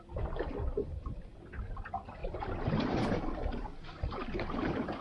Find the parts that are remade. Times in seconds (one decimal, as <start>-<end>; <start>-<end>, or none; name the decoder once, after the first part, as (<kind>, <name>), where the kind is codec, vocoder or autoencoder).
0.0-5.0 (vocoder, BigVGAN v2)